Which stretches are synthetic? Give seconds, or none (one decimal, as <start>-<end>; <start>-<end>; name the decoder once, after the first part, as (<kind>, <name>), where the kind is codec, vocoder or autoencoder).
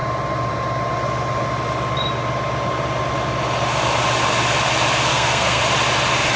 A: 5.1-5.6 (codec, SNAC)